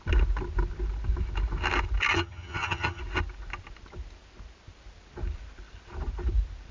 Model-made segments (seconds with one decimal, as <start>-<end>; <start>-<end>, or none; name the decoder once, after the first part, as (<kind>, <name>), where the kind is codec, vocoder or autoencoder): 2.1-3.0 (vocoder, HiFi-GAN)